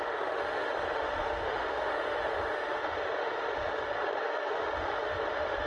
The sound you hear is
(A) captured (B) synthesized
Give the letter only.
B